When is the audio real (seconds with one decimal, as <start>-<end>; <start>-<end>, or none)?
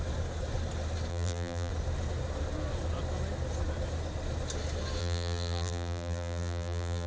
0.0-1.1; 1.7-5.0